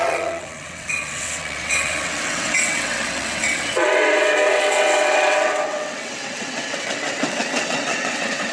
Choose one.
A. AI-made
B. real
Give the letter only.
A